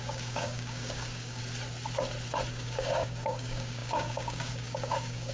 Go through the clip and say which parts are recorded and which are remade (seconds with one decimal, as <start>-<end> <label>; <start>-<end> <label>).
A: 0.0-1.4 remade; 1.4-2.5 recorded; 2.5-5.3 remade